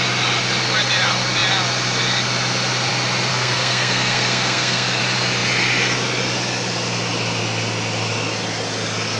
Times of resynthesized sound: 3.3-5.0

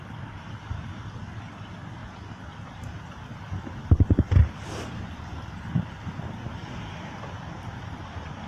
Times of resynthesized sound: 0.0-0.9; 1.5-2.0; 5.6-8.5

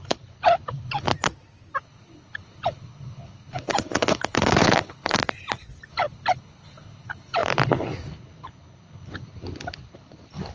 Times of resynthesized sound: 0.0-1.1; 1.8-5.2; 5.9-10.5

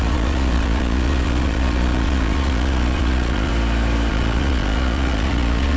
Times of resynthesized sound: 0.0-3.5; 4.1-5.8